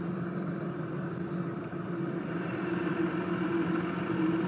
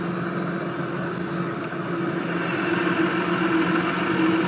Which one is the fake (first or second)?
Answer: first